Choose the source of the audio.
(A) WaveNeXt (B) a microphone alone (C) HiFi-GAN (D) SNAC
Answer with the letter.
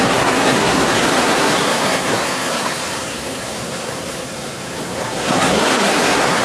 D